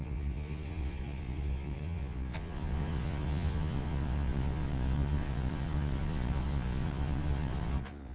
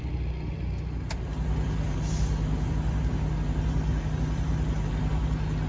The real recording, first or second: second